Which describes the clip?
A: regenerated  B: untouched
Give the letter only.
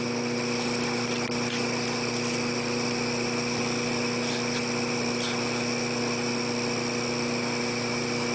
B